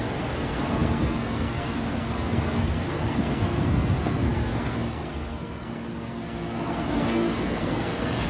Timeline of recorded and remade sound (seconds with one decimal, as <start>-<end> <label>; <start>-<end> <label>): 0.0-8.3 remade